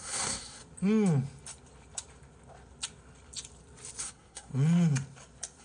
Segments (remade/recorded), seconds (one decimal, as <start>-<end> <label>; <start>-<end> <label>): 0.0-0.6 remade; 0.6-4.0 recorded; 4.0-4.5 remade; 4.5-5.6 recorded